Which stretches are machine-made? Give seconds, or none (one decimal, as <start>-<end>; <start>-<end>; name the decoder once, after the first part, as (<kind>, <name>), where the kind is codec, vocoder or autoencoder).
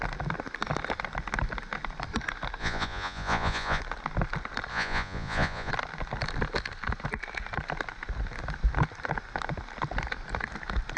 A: 2.6-3.8 (vocoder, Vocos); 4.7-5.7